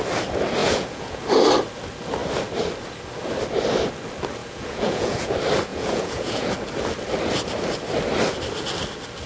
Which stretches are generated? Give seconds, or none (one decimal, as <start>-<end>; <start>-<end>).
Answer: 0.6-1.2; 4.4-5.3; 5.7-6.5